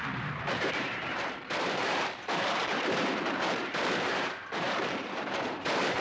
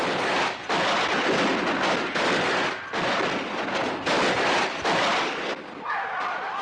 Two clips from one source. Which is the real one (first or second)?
second